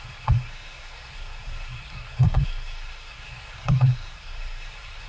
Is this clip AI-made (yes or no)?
yes